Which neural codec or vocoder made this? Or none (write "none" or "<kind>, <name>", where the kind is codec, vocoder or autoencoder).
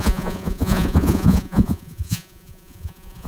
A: vocoder, Vocos